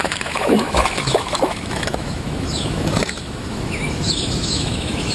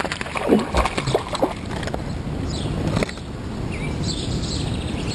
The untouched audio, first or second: second